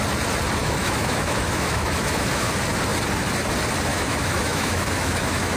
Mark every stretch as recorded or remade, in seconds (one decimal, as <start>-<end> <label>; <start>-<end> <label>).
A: 0.0-0.6 recorded; 0.6-2.5 remade; 2.5-3.9 recorded; 3.9-5.6 remade